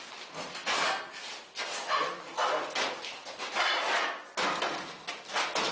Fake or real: real